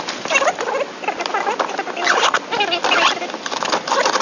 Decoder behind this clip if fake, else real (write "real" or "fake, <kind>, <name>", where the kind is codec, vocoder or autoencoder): real